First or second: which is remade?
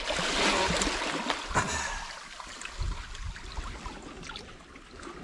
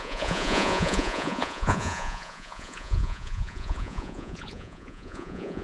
second